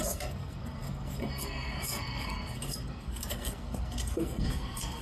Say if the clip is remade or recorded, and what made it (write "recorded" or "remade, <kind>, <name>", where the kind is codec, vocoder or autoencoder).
remade, codec, SNAC